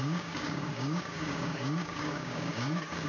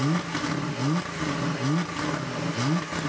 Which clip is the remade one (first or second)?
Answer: first